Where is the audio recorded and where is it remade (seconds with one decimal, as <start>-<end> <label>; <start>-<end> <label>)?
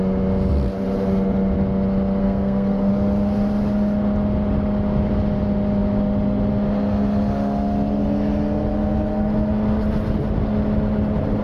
0.0-2.2 recorded; 2.2-2.9 remade; 2.9-11.4 recorded